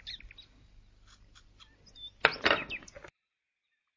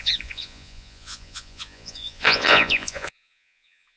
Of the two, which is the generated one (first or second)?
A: second